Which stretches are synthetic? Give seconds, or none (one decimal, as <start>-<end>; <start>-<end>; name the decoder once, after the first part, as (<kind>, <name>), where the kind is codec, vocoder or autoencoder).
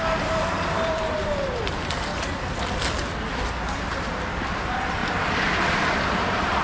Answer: 0.0-2.1 (vocoder, BigVGAN v2); 4.0-5.0; 5.5-6.6